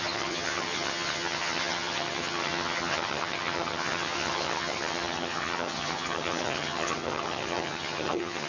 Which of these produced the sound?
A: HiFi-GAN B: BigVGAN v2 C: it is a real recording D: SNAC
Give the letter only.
A